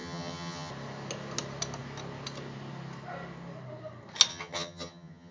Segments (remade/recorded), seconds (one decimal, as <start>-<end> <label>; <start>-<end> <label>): 0.0-0.7 remade; 0.7-4.3 recorded; 4.3-5.3 remade